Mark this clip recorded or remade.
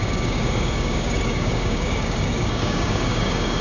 remade